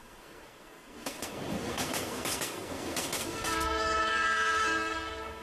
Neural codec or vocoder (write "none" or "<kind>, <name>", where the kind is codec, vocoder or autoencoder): codec, SNAC